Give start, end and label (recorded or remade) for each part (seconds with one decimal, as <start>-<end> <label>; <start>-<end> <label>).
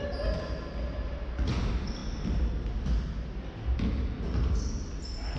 0.0-5.4 recorded